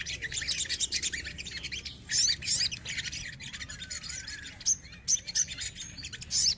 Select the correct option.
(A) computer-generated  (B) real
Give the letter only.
B